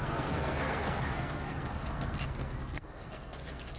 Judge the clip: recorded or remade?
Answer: remade